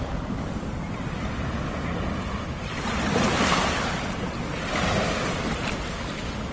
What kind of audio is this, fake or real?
real